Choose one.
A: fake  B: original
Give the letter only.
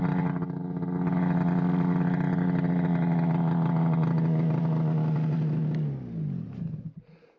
B